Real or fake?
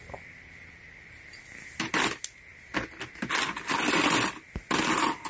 real